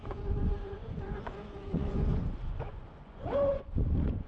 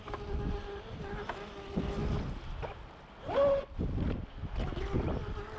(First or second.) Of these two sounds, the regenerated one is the first